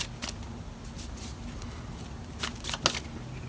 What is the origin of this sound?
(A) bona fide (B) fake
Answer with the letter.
A